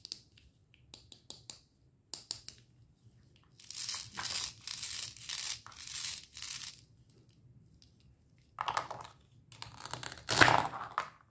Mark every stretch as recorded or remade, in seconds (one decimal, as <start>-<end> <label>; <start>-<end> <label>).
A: 0.0-11.3 recorded